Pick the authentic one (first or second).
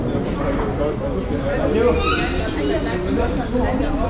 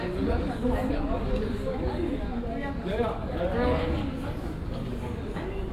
first